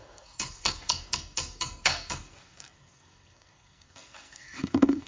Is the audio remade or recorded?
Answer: remade